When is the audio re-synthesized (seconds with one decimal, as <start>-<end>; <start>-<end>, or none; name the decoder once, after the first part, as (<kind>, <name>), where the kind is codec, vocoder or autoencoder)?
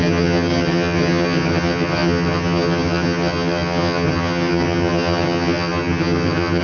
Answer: 0.0-6.6 (vocoder, HiFi-GAN)